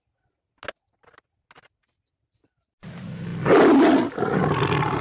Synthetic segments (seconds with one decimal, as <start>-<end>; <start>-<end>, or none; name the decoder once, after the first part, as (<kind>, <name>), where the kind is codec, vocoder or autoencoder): none